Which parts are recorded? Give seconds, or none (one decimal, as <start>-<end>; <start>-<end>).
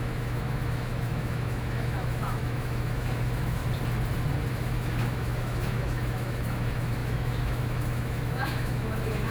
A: 3.6-4.5